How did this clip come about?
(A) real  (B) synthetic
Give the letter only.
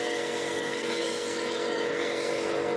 B